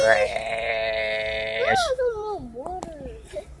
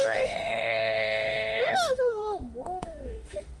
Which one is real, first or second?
first